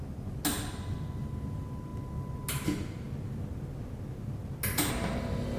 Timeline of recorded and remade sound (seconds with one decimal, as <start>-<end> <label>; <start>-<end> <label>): 0.0-5.6 recorded